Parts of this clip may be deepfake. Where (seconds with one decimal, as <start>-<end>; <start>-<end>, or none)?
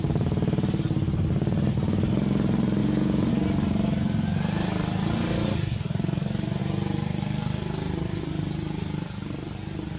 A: 2.8-3.3